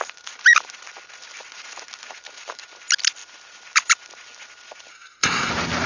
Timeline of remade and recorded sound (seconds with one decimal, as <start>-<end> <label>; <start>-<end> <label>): 0.0-4.9 recorded; 4.9-5.5 remade; 5.5-5.9 recorded